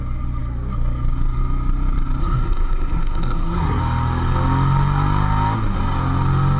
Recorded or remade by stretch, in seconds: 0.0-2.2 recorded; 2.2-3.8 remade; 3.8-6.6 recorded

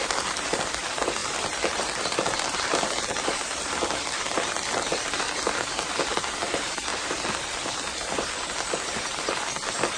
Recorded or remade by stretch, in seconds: 0.0-10.0 remade